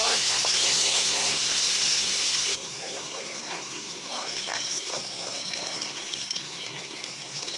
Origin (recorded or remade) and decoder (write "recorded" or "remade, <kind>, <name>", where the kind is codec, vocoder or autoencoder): remade, codec, SNAC